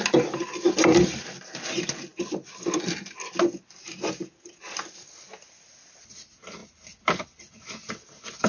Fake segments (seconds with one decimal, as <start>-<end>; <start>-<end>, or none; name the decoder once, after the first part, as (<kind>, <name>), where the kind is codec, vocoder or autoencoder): none